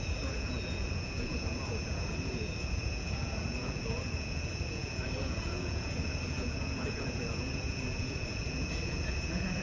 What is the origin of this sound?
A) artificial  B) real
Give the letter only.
A